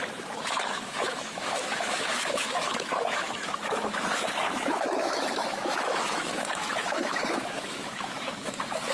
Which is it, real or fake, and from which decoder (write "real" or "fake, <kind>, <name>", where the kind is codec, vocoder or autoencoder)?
fake, autoencoder, DAC-VAE